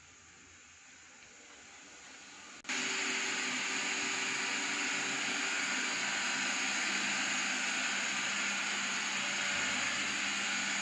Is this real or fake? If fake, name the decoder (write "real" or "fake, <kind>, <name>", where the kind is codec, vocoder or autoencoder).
real